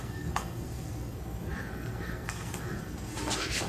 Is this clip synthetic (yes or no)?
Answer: yes